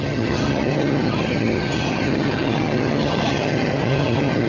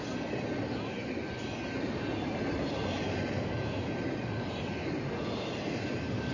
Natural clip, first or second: second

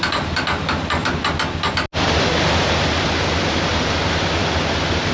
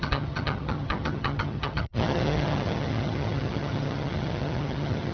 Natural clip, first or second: first